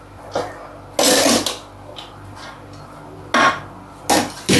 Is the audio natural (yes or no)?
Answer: yes